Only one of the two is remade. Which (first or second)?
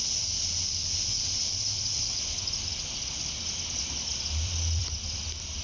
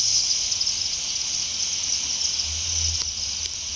first